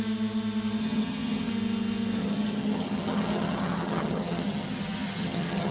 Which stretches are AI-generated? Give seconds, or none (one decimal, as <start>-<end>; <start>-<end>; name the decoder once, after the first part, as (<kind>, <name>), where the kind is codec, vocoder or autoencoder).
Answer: 0.8-1.5 (vocoder, HiFi-GAN); 2.2-5.7